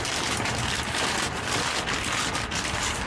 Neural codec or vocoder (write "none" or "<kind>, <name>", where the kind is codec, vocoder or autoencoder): none